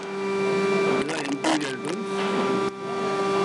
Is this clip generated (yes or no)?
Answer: no